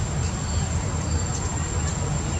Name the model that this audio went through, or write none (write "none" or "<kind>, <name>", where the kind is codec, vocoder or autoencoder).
none